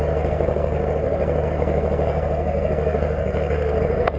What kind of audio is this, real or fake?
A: fake